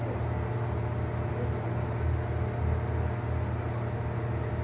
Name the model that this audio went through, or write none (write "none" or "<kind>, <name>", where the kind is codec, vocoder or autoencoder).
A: none